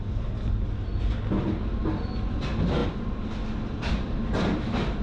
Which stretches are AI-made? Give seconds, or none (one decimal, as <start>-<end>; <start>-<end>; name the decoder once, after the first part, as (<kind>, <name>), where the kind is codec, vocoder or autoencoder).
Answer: none